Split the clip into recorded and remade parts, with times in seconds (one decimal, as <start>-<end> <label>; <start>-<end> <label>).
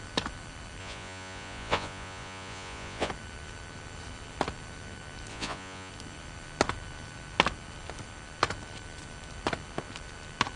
0.0-0.8 recorded; 0.8-3.1 remade; 3.1-5.3 recorded; 5.3-5.9 remade; 5.9-10.6 recorded